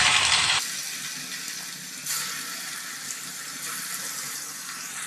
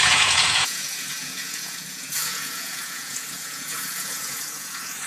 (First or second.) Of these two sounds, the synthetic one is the second